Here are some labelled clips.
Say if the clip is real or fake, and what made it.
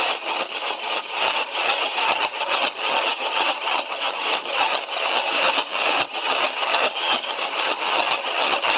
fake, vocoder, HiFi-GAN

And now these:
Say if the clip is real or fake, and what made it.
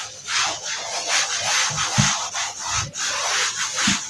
real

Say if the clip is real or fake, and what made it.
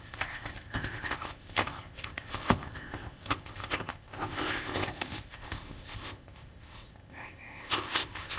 fake, codec, ZipCodec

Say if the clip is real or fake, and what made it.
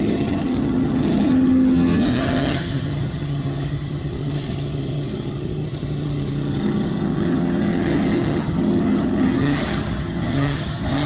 fake, vocoder, HiFi-GAN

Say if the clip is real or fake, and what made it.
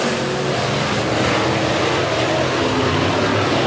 real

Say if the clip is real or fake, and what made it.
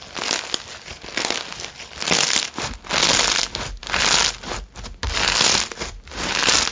real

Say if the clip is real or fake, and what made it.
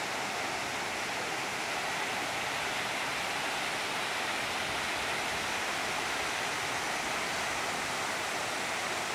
real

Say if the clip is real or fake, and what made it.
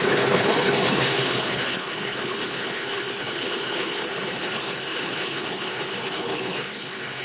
fake, codec, HILCodec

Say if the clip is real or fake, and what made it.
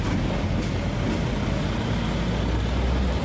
real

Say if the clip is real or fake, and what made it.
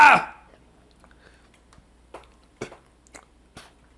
real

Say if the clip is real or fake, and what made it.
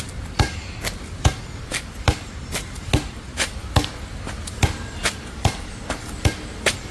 real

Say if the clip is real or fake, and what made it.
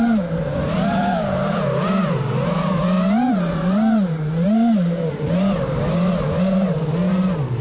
fake, vocoder, BigVGAN v2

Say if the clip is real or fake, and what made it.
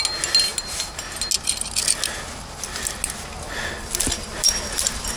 real